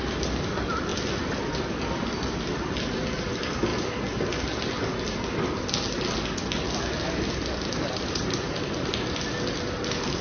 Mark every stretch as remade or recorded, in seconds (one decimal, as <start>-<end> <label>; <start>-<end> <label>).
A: 0.0-0.9 remade; 0.9-1.5 recorded; 1.5-3.7 remade; 3.7-7.9 recorded; 7.9-10.2 remade